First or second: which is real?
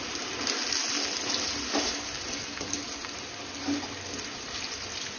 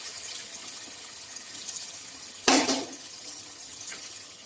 first